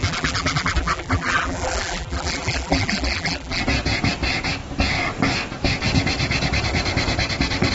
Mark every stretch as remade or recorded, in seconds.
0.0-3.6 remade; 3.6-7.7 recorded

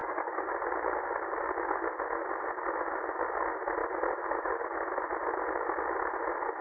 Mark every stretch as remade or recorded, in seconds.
0.0-0.5 remade; 0.5-6.6 recorded

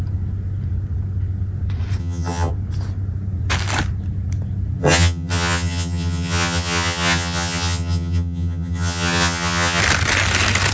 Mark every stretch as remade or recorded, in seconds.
0.0-2.0 recorded; 2.0-2.5 remade; 2.5-4.8 recorded; 4.8-9.8 remade; 9.8-10.7 recorded